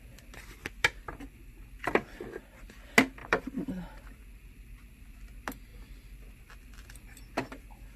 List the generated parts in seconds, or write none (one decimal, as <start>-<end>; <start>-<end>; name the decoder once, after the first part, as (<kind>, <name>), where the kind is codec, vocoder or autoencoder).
3.2-4.0 (vocoder, BigVGAN v2)